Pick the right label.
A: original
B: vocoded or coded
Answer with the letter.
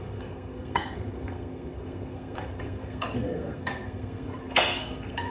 B